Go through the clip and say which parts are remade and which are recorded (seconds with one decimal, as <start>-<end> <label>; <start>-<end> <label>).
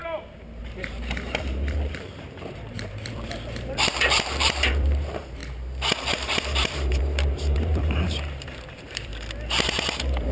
0.0-0.6 recorded; 0.6-5.4 remade; 5.4-6.1 recorded; 6.1-9.1 remade; 9.1-9.6 recorded; 9.6-10.3 remade